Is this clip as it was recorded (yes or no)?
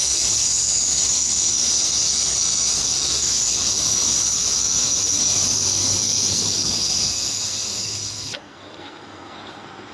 no